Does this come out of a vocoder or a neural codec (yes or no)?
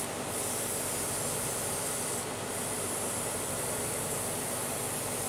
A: yes